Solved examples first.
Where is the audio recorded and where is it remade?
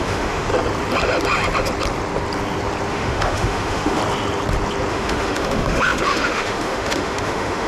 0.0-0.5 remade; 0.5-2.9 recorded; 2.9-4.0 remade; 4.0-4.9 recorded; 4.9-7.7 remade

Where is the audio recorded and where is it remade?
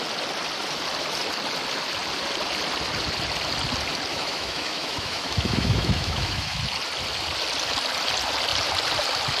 0.0-4.1 recorded; 4.1-6.6 remade; 6.6-9.4 recorded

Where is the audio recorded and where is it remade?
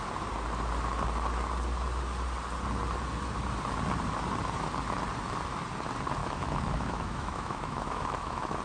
0.0-6.2 recorded; 6.2-8.6 remade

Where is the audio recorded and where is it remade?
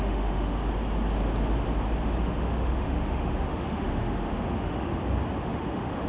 0.0-0.6 remade; 0.6-2.2 recorded; 2.2-4.9 remade; 4.9-5.4 recorded; 5.4-6.1 remade